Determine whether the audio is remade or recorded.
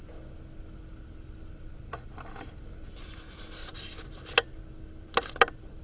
recorded